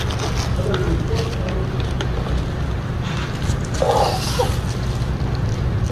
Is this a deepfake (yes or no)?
no